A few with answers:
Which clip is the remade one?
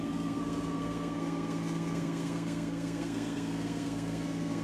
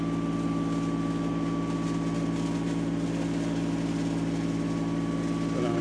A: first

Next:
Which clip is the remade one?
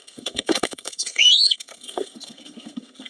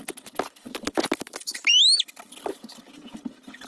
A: first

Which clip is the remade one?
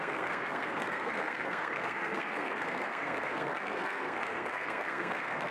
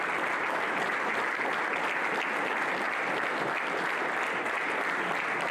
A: first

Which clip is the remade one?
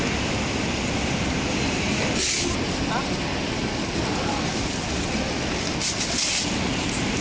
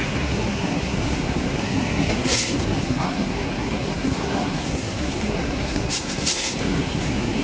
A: second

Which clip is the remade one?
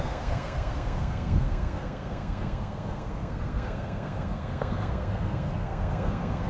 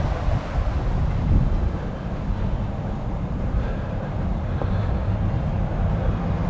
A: first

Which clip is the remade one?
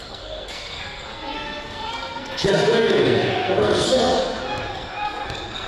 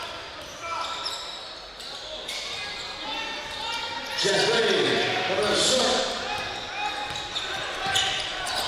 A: first